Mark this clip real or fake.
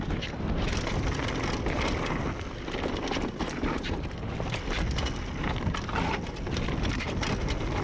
real